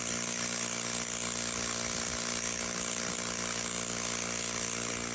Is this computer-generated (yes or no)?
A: no